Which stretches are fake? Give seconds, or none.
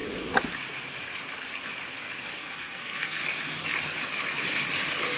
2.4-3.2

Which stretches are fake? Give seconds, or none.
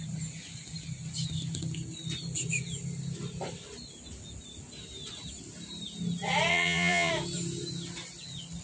6.5-7.1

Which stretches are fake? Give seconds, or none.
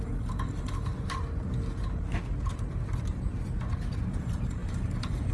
0.0-0.9; 4.1-5.3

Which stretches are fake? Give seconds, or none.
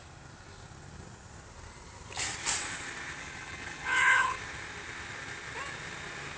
3.2-4.4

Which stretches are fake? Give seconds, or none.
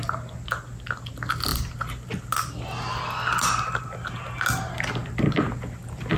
none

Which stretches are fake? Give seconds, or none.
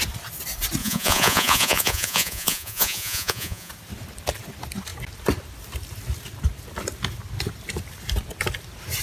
0.8-3.7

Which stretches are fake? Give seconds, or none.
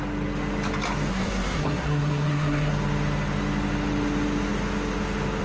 1.1-2.7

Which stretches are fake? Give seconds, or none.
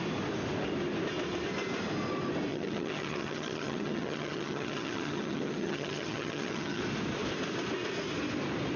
2.5-6.8